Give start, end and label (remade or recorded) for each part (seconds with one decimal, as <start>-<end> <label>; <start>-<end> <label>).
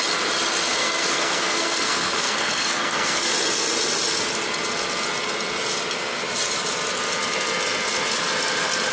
0.0-0.8 recorded; 0.8-3.3 remade; 3.3-8.9 recorded